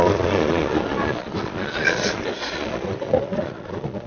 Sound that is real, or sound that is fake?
fake